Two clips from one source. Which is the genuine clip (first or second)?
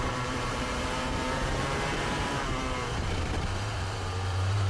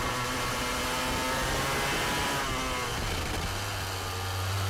second